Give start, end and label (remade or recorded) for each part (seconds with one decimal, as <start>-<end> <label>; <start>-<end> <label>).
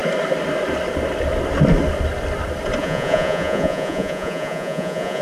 0.0-2.8 recorded; 2.8-5.2 remade